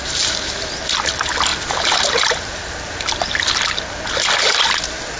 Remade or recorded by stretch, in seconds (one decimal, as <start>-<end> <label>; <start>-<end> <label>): 0.0-5.2 recorded